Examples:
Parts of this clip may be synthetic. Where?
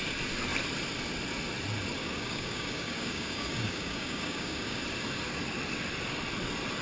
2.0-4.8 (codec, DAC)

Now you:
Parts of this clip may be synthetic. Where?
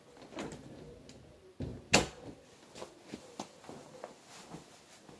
none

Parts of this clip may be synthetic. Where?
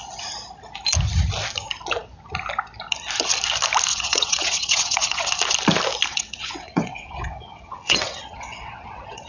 3.9-5.3 (vocoder, WaveNeXt); 6.1-9.3